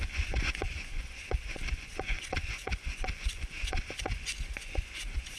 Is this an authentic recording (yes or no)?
no